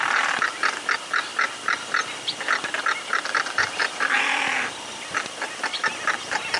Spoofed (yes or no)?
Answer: no